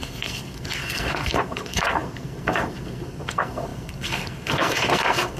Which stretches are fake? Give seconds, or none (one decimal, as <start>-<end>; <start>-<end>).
0.0-5.4